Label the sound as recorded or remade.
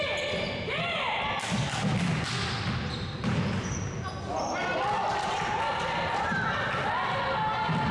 recorded